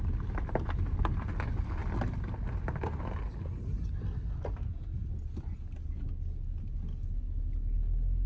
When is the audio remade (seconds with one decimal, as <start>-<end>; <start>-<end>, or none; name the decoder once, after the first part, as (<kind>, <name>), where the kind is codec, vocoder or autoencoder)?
none